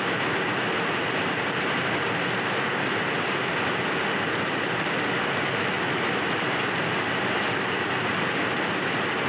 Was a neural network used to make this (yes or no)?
no